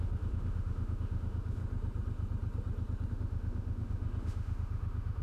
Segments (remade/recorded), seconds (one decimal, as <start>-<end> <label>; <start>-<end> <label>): 0.0-1.6 remade; 1.6-3.1 recorded; 3.1-5.2 remade